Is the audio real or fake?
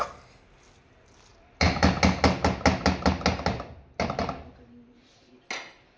real